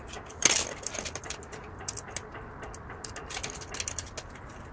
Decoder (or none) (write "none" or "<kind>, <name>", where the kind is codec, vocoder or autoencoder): none